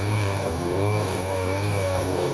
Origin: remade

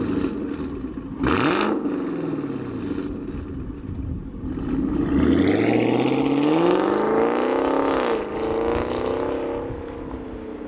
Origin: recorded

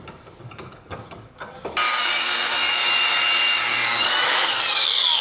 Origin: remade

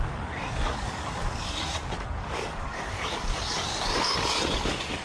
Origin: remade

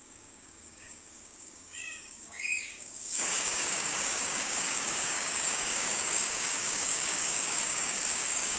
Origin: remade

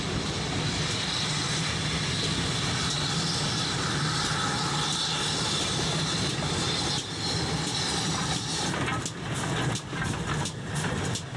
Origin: recorded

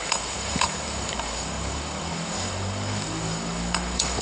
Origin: remade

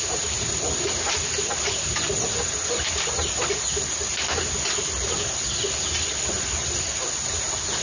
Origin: recorded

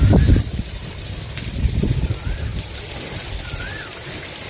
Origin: recorded